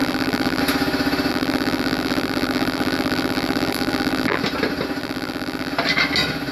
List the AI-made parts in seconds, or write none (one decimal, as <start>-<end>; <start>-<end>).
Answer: 0.0-0.6; 1.3-4.4; 5.0-5.7